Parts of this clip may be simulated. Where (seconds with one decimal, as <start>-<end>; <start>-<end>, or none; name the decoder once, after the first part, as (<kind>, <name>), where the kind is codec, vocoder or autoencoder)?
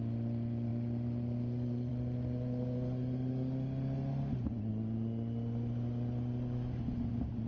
none